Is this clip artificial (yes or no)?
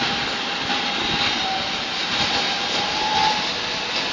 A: no